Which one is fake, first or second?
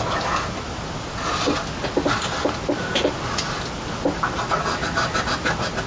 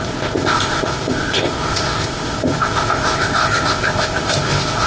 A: second